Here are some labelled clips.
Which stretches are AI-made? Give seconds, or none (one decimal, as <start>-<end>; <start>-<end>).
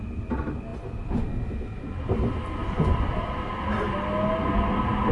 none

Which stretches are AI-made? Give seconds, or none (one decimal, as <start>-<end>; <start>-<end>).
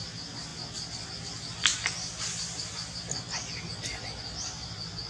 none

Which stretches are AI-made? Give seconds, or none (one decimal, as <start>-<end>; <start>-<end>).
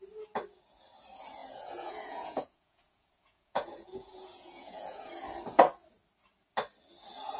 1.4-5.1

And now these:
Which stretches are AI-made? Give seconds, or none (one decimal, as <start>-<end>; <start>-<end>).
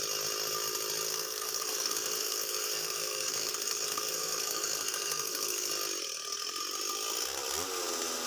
1.1-5.7